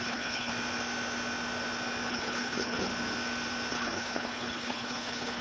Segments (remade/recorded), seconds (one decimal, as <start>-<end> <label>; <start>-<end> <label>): 0.0-0.5 remade; 0.5-2.1 recorded; 2.1-2.9 remade; 2.9-3.7 recorded; 3.7-5.4 remade